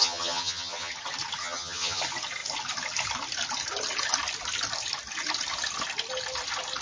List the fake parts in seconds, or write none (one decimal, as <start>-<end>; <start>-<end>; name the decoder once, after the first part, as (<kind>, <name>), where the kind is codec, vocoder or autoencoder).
0.0-0.9 (vocoder, HiFi-GAN); 1.4-2.0